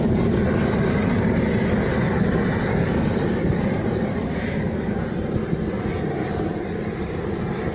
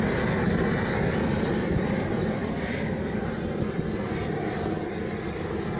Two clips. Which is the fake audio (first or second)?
first